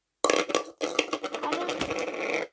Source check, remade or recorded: recorded